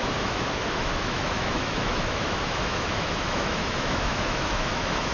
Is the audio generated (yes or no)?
yes